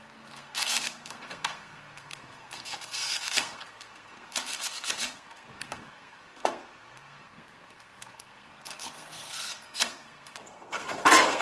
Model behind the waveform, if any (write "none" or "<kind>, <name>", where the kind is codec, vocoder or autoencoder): codec, SNAC